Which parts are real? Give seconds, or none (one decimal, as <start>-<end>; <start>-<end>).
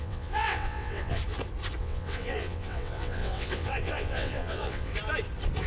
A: 1.2-1.8; 4.9-5.7